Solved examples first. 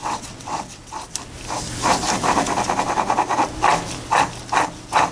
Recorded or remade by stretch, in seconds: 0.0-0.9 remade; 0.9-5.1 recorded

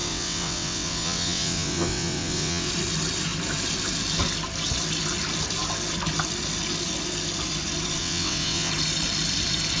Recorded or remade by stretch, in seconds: 0.0-2.7 remade; 2.7-8.0 recorded; 8.0-8.7 remade; 8.7-9.8 recorded